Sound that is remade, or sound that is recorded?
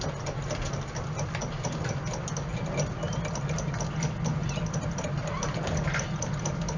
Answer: recorded